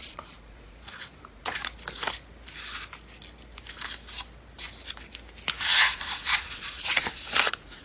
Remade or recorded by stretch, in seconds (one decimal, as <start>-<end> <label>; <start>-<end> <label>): 0.0-1.6 remade; 1.6-5.6 recorded; 5.6-7.8 remade